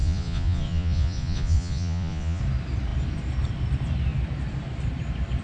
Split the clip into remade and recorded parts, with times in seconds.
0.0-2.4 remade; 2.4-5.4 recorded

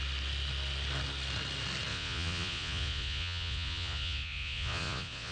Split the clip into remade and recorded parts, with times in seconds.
0.0-1.9 recorded; 1.9-5.3 remade

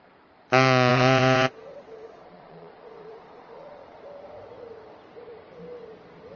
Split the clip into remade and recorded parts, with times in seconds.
0.0-0.9 recorded; 0.9-4.0 remade; 4.0-6.4 recorded

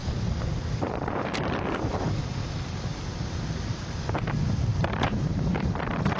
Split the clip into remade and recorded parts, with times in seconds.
0.0-3.7 remade; 3.7-4.7 recorded; 4.7-5.8 remade; 5.8-6.2 recorded

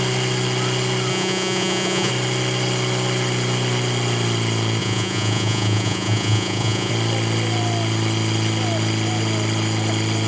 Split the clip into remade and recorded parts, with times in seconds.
0.0-1.1 recorded; 1.1-2.1 remade; 2.1-4.8 recorded; 4.8-6.9 remade; 6.9-10.3 recorded

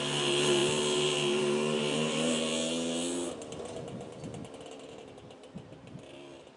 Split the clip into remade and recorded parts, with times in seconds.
0.0-6.6 recorded